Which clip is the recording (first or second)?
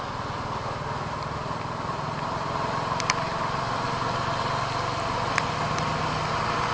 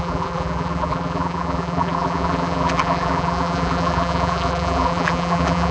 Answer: first